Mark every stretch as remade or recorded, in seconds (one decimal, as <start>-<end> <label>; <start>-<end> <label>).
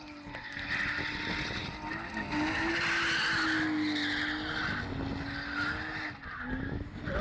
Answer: 0.0-7.2 recorded